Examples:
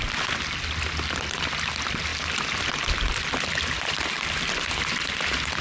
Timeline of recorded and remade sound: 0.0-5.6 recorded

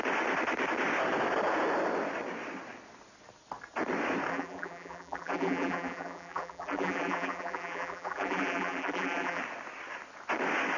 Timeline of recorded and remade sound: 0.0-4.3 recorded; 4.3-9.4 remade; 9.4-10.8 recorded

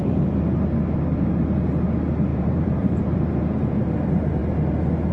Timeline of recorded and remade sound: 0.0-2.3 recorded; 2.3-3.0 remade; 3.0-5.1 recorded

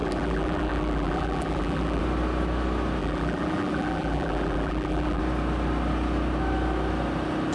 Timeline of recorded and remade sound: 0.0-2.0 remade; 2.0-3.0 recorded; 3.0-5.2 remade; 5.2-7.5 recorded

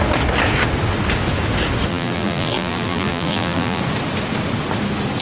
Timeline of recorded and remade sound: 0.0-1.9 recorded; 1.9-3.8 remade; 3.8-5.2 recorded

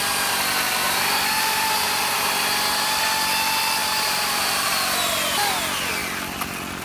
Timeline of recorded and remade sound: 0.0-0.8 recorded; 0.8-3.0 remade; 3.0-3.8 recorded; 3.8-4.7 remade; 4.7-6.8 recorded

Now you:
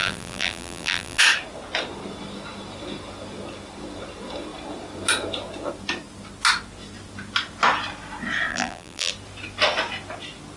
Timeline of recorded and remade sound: 0.0-1.2 remade; 1.2-8.5 recorded; 8.5-9.1 remade; 9.1-10.6 recorded